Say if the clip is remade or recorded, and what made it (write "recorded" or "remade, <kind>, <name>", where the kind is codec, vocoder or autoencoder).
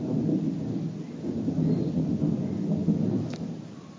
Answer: recorded